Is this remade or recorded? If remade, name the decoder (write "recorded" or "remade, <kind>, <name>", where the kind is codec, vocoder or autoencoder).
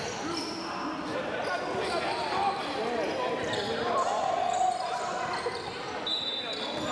recorded